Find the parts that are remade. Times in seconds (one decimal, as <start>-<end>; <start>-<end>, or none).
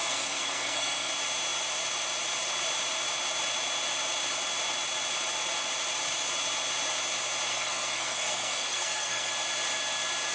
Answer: 0.0-1.1; 7.5-9.3